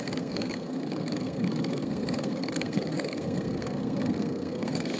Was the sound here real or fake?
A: fake